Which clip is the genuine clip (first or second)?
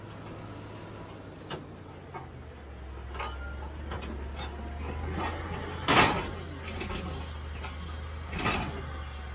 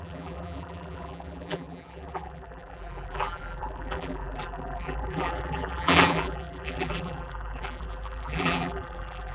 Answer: first